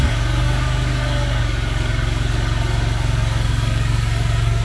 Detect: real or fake fake